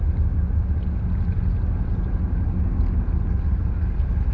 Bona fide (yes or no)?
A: yes